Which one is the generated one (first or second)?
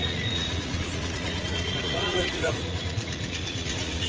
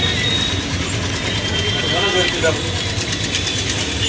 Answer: first